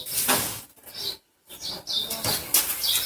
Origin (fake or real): real